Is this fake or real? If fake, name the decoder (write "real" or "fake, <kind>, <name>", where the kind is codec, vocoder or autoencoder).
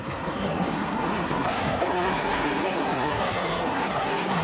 fake, codec, SNAC